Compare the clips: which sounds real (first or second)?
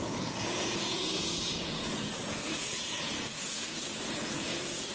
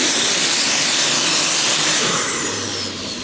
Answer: second